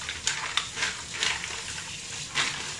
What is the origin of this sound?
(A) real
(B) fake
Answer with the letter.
A